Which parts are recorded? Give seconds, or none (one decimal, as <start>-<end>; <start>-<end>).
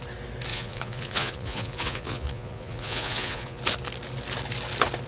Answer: 0.0-0.5; 3.6-5.1